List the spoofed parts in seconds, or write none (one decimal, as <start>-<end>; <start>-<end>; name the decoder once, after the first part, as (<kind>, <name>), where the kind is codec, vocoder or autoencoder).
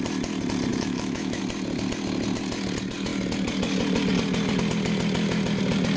0.7-1.4 (autoencoder, DAC-VAE)